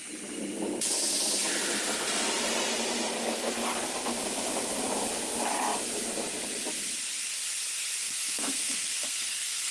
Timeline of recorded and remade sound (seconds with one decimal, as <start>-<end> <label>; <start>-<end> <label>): 0.0-8.0 recorded; 8.0-9.7 remade